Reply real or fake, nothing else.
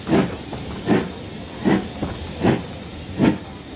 real